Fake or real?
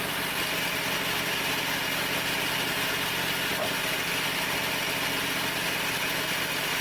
real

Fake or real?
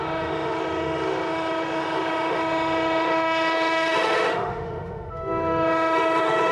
fake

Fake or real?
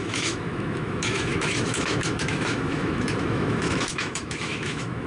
fake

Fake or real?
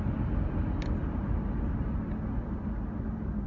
real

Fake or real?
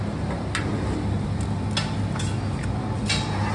real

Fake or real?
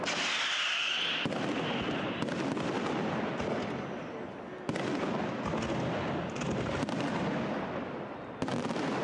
real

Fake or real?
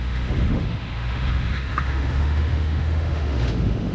fake